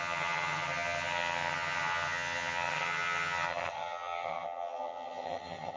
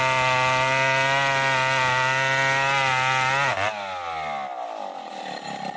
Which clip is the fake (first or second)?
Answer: first